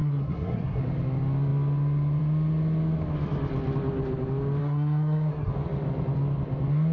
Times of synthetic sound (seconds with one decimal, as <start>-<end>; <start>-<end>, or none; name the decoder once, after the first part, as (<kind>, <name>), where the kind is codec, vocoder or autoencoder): 0.0-0.8 (codec, SNAC); 4.6-5.5